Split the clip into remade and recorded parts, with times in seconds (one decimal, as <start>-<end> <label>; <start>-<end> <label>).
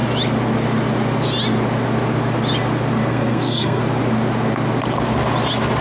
0.0-3.1 recorded; 3.1-3.8 remade; 3.8-5.8 recorded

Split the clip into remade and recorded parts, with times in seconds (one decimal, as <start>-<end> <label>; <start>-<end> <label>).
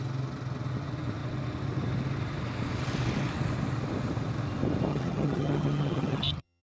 0.0-4.9 recorded; 4.9-6.6 remade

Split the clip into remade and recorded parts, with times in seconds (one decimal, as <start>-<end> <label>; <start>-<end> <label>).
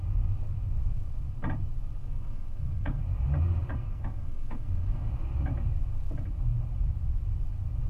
0.0-2.0 recorded; 2.0-3.0 remade; 3.0-3.7 recorded; 3.7-5.1 remade; 5.1-7.9 recorded